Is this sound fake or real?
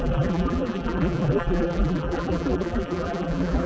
fake